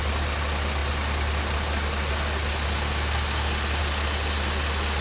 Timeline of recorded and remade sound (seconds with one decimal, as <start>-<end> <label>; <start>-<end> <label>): 0.0-5.0 recorded

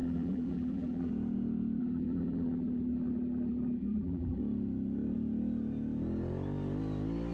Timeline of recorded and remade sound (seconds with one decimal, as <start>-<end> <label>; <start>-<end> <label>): 0.0-1.1 remade; 1.1-1.8 recorded; 1.8-4.4 remade; 4.4-7.3 recorded